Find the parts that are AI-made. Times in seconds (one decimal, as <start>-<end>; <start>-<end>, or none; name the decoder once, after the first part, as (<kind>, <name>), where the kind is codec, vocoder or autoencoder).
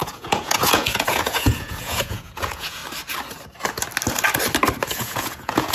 0.0-2.8 (vocoder, Vocos); 4.9-5.7